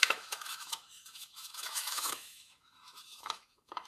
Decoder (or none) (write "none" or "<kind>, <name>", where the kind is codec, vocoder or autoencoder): autoencoder, DAC-VAE